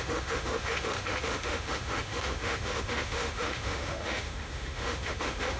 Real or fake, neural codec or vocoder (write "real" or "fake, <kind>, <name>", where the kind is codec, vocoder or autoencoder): fake, autoencoder, DAC-VAE